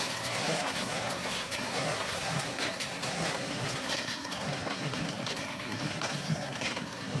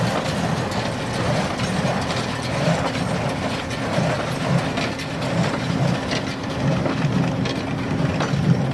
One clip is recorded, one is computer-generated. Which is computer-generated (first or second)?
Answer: first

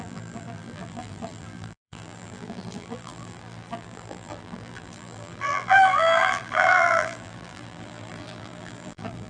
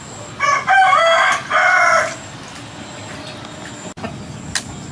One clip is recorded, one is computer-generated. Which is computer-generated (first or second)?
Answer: first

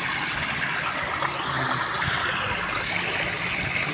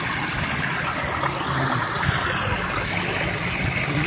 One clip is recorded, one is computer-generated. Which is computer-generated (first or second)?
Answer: second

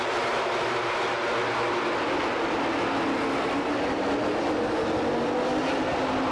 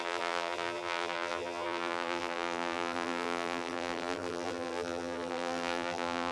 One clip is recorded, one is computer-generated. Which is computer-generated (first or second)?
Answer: second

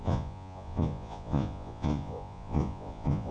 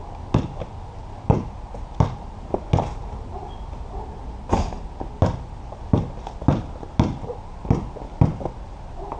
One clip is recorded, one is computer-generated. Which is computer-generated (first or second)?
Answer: first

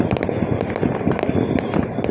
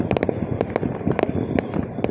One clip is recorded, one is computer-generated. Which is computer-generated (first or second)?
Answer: second